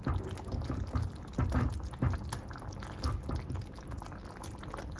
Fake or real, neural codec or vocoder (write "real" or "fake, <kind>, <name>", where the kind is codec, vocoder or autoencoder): real